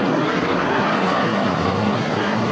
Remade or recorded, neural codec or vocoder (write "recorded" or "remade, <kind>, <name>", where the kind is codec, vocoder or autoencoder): remade, codec, SNAC